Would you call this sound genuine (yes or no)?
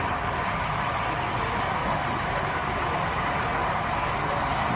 yes